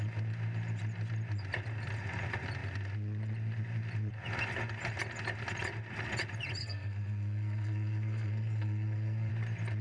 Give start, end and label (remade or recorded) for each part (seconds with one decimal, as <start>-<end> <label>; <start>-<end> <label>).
0.0-6.6 recorded; 6.6-9.3 remade; 9.3-9.8 recorded